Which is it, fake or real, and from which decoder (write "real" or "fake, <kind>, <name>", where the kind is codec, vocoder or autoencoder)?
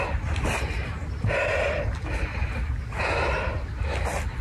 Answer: real